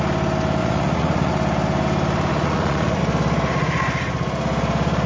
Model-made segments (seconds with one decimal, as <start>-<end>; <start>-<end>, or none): 0.6-1.3; 2.3-3.0